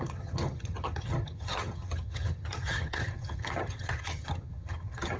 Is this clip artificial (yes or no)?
yes